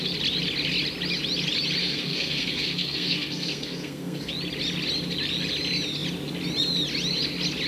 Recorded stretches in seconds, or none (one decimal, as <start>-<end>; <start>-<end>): 0.0-1.8; 4.3-7.7